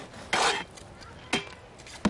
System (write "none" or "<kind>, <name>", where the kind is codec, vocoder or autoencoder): none